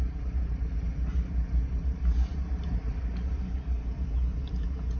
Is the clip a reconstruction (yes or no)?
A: yes